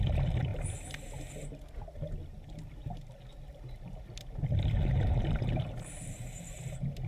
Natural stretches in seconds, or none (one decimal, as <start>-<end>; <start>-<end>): 0.5-4.8